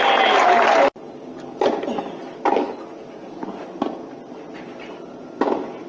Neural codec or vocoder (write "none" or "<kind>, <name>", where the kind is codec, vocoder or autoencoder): none